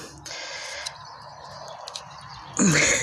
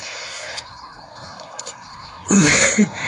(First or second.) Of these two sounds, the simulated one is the second